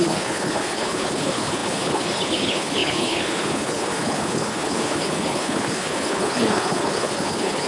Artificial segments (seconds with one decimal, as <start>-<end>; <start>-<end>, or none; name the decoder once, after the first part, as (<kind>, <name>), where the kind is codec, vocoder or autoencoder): 0.0-7.7 (codec, HILCodec)